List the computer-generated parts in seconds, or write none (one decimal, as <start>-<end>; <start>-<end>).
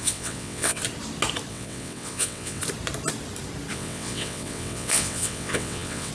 0.0-0.8; 1.5-2.6; 3.7-6.1